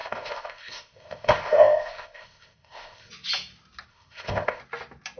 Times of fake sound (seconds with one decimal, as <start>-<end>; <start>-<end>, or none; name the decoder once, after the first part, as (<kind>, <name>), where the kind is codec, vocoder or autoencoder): 0.0-3.1 (codec, ZipCodec); 3.9-4.6